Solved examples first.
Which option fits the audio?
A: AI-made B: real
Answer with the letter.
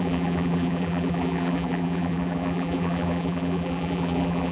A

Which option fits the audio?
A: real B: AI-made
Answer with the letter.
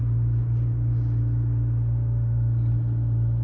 A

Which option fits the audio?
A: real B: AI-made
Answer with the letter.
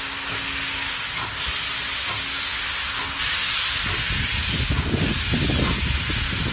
A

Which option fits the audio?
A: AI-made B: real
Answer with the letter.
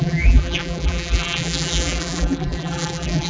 A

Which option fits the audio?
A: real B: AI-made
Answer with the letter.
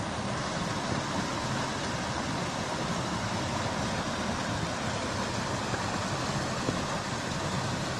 A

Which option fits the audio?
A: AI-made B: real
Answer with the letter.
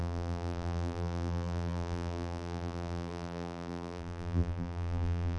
A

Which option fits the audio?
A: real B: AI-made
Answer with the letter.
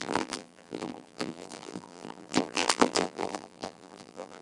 B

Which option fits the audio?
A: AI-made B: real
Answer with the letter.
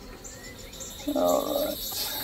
B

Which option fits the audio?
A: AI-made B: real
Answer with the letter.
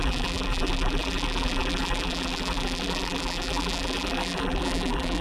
A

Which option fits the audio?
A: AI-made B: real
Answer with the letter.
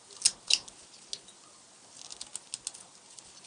B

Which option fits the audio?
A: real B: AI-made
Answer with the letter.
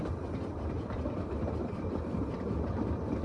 B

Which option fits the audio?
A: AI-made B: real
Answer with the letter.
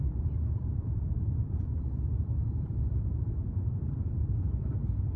A